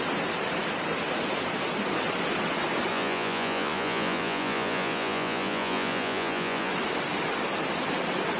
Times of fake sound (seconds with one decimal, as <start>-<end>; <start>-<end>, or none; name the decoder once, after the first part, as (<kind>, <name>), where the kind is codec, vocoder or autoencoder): 2.9-6.7 (vocoder, Vocos)